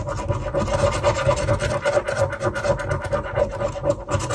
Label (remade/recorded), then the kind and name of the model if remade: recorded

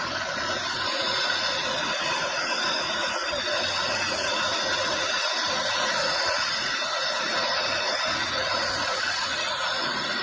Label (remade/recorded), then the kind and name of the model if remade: remade, vocoder, Vocos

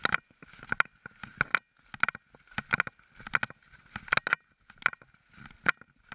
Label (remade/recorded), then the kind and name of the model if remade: recorded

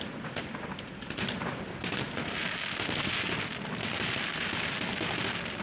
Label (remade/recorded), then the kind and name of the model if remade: recorded